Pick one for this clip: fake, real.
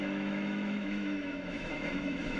fake